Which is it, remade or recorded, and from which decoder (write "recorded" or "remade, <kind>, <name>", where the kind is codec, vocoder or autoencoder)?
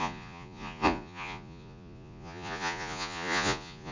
remade, vocoder, Vocos